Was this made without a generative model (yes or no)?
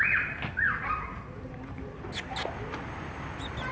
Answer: yes